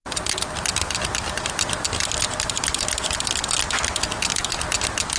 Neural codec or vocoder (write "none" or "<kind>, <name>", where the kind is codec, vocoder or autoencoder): none